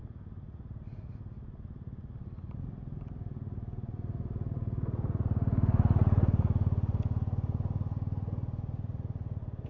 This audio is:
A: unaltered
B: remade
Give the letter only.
A